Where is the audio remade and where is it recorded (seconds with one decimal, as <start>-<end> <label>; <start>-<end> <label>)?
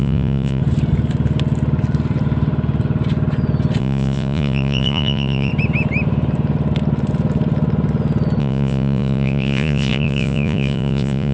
0.0-0.6 remade; 0.6-3.8 recorded; 3.8-5.5 remade; 5.5-8.4 recorded; 8.4-11.3 remade